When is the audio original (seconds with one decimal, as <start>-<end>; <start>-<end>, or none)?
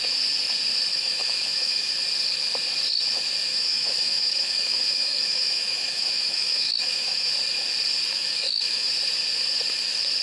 0.0-0.9; 1.9-3.5; 7.3-8.1; 8.9-10.2